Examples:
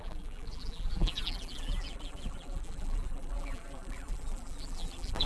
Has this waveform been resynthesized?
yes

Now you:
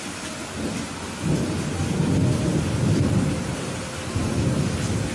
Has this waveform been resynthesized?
no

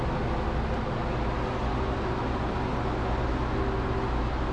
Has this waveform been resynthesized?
no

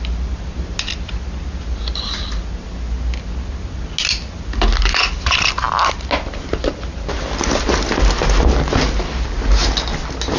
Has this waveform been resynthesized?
no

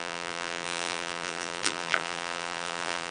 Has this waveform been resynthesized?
yes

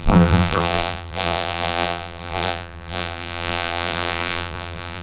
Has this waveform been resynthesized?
yes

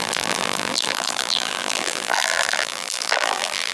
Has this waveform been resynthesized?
yes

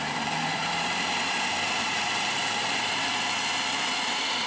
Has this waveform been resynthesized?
yes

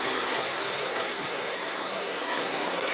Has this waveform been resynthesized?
yes